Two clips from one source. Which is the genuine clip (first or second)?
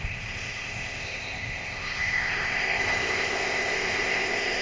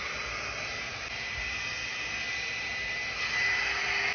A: second